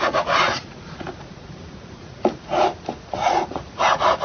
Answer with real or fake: fake